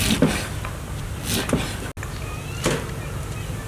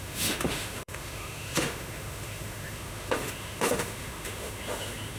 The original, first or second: first